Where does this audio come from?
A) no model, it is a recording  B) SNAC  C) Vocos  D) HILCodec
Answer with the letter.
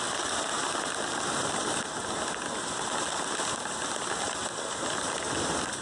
A